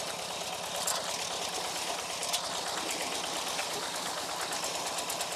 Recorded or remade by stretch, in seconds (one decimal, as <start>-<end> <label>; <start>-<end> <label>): 0.0-3.6 recorded; 3.6-4.3 remade; 4.3-5.4 recorded